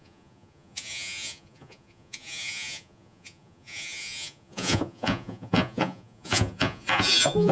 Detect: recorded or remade remade